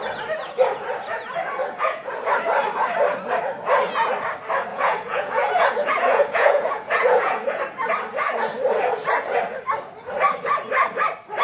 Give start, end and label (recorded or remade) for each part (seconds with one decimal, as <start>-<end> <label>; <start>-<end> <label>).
0.0-1.6 recorded; 1.6-2.1 remade; 2.1-4.7 recorded; 4.7-7.6 remade; 7.6-11.4 recorded